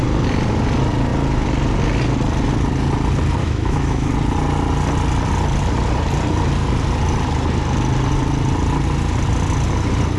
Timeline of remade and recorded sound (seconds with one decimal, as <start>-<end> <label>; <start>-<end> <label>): 0.0-3.4 recorded; 3.4-4.1 remade; 4.1-10.2 recorded